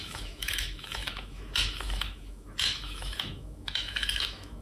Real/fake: fake